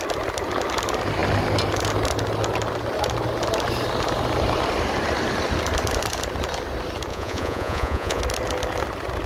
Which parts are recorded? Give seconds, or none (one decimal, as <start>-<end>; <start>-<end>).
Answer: 0.0-7.1; 8.2-9.3